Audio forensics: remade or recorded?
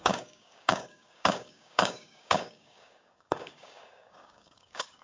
remade